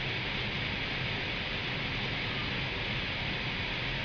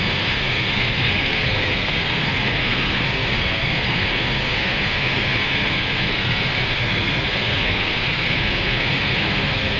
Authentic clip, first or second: first